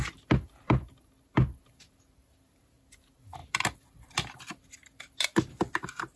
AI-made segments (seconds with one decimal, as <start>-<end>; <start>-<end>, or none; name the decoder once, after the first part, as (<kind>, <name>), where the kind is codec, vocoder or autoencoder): none